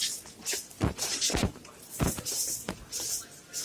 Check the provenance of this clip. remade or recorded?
recorded